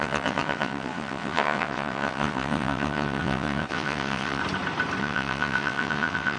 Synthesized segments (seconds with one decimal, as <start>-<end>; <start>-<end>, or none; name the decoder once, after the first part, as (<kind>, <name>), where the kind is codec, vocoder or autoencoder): 0.0-4.4 (vocoder, WaveNeXt); 5.0-6.4